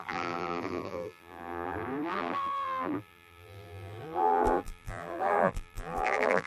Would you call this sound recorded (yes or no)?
no